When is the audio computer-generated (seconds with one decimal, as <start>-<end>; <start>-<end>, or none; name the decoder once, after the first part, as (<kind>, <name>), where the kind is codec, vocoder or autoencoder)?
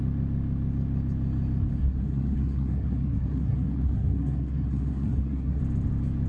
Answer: 1.8-5.6 (codec, SNAC)